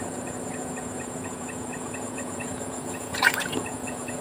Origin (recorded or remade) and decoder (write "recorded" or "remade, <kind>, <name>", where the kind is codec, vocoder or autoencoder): remade, vocoder, Vocos